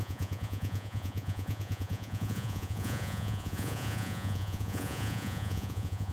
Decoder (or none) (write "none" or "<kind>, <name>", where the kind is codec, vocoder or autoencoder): vocoder, Vocos